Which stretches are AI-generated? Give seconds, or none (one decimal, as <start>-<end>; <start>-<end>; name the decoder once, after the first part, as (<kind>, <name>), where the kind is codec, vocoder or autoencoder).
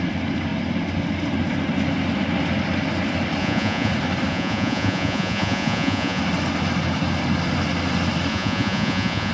3.4-3.9 (vocoder, Vocos); 4.3-6.2; 8.3-9.3